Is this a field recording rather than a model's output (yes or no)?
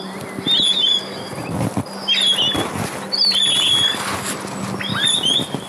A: yes